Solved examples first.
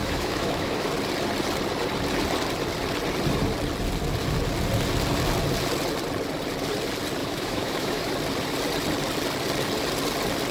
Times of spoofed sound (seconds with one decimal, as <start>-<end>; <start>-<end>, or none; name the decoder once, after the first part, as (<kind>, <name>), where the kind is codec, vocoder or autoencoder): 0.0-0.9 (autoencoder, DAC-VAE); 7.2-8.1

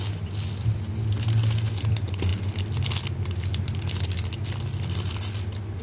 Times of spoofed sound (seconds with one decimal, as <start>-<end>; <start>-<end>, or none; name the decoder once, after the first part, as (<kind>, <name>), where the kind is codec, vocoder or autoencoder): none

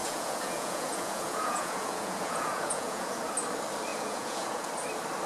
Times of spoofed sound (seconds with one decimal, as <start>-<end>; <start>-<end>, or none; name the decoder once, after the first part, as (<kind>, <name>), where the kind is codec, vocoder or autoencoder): 0.0-3.2 (vocoder, Vocos); 3.9-4.7

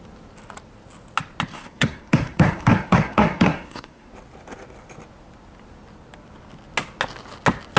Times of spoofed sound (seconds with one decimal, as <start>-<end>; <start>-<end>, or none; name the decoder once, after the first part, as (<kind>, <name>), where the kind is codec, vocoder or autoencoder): 1.5-4.1 (codec, SNAC)